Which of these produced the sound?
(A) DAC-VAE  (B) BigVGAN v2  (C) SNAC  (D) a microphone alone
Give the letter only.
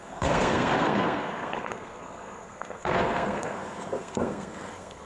C